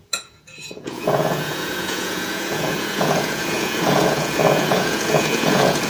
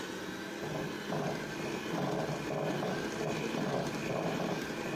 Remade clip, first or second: first